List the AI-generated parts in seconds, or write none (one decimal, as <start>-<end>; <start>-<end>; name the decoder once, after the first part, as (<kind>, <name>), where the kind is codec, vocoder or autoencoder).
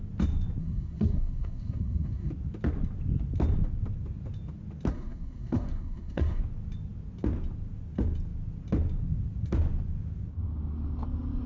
0.6-2.3 (codec, SNAC); 4.9-6.4